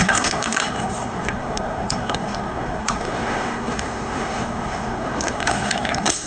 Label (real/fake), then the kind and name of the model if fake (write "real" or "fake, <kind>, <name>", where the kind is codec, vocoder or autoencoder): fake, codec, SNAC